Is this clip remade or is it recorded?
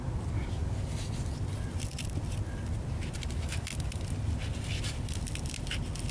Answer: recorded